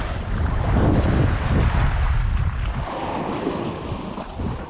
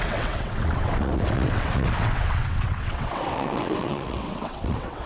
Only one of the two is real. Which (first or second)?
first